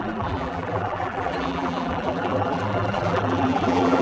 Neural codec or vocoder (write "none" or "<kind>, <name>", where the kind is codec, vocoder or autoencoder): vocoder, BigVGAN v2